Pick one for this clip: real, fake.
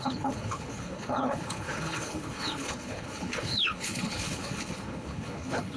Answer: fake